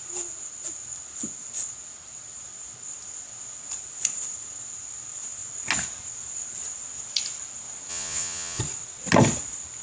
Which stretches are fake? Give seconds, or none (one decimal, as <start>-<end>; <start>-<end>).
7.9-8.6